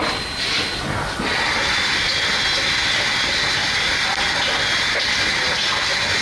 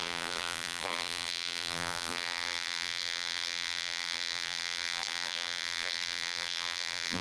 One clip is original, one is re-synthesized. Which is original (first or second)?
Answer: first